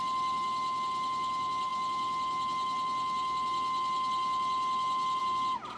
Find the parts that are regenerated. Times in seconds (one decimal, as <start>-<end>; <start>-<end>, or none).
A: none